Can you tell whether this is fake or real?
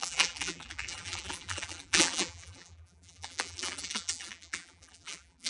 fake